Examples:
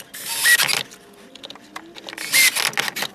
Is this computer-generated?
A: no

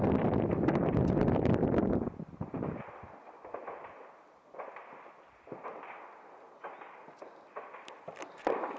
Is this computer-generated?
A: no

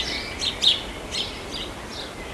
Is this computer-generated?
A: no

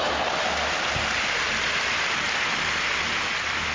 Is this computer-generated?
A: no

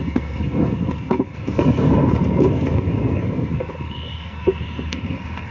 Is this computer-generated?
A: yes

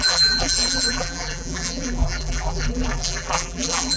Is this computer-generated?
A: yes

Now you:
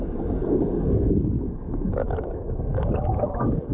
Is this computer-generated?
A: yes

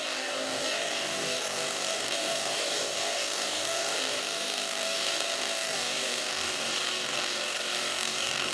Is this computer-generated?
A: yes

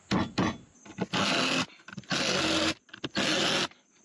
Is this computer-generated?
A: no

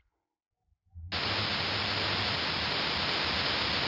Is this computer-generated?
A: no